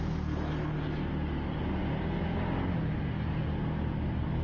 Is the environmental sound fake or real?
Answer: real